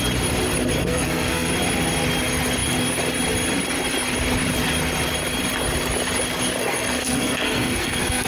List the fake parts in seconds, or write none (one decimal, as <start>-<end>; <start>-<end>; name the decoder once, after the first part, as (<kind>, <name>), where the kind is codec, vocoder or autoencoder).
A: 0.8-1.5 (codec, SNAC); 6.6-8.3